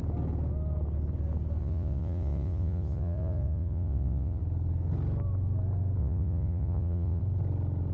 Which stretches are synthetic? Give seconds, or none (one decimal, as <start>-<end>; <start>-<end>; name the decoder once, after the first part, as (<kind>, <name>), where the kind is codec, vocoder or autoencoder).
1.6-4.4 (vocoder, Vocos); 6.0-7.2